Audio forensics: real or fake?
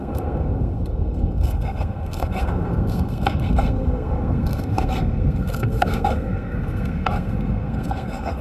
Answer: fake